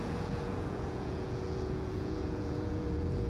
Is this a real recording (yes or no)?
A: no